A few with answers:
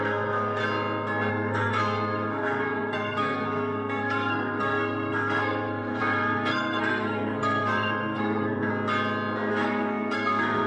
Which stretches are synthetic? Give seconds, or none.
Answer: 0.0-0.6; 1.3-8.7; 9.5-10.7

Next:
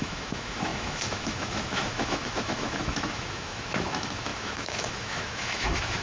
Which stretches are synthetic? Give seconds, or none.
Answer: 0.0-6.0

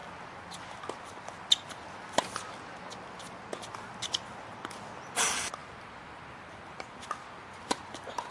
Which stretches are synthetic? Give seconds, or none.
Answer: none

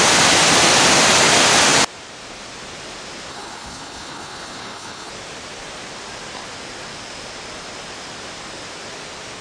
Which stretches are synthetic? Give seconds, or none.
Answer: 3.3-5.1

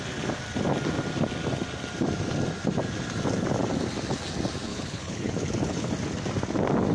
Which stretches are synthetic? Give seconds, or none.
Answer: 4.7-5.9

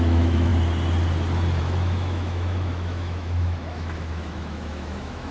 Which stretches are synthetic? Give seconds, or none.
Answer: 0.0-0.5; 1.6-5.3

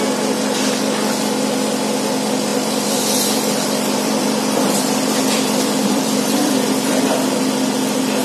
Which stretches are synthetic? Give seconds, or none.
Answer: 2.5-7.0